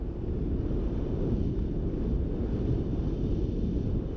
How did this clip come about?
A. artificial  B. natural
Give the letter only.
B